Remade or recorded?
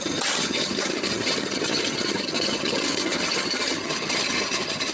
remade